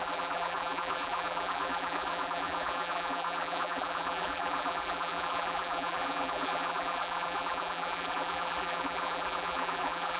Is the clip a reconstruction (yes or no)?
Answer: yes